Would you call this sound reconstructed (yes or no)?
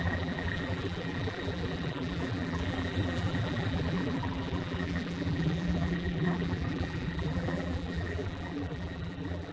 yes